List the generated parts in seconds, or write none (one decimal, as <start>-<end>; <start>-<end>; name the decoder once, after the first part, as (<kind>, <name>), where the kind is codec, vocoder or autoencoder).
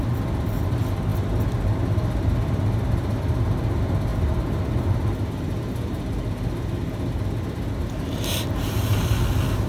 none